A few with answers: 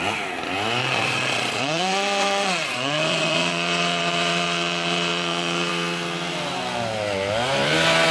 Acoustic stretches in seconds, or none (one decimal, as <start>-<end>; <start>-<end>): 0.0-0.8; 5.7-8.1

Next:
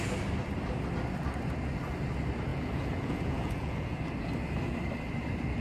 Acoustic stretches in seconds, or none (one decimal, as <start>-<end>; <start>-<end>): 0.0-2.5; 4.0-5.6

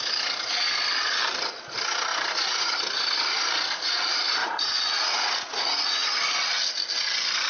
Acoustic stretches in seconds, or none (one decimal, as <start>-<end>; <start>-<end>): 0.0-2.1; 2.7-4.4; 6.1-7.5

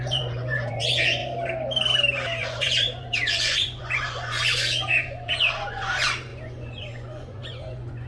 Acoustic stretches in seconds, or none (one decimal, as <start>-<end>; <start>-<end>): 1.2-2.4